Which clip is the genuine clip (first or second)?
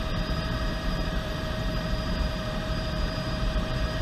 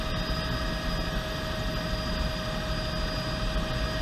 second